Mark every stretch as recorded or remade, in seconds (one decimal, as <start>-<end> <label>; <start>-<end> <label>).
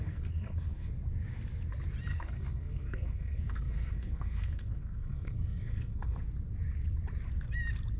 0.0-0.9 remade; 0.9-2.1 recorded; 2.1-6.2 remade; 6.2-8.0 recorded